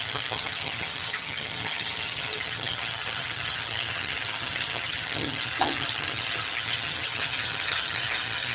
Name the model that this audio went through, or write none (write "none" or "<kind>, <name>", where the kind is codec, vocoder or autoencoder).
vocoder, HiFi-GAN